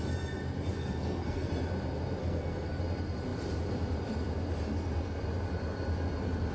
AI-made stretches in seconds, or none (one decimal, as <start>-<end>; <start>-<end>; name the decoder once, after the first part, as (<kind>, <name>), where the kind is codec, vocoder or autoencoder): 0.7-1.5 (codec, SNAC); 2.2-2.8